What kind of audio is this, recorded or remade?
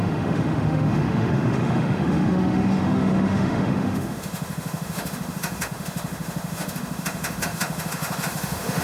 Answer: remade